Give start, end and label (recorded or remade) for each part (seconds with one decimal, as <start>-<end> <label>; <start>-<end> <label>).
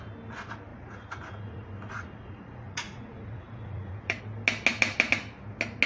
0.0-0.7 recorded; 0.7-4.2 remade; 4.2-5.9 recorded